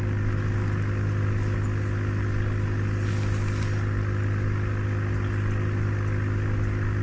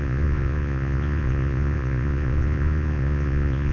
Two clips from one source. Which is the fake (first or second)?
second